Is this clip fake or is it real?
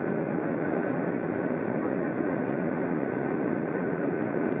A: fake